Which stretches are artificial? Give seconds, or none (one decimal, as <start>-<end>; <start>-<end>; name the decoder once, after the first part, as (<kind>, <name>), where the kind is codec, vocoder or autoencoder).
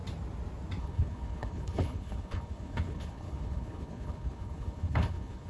0.8-5.5 (codec, HILCodec)